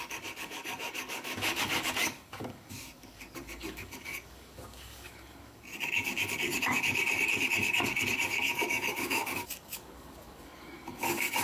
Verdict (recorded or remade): remade